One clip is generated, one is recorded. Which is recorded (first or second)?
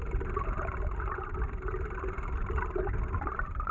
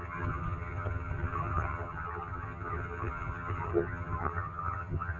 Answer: first